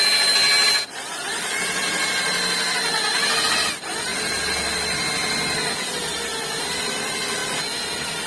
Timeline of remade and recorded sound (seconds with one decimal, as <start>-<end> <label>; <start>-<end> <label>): 0.0-8.3 recorded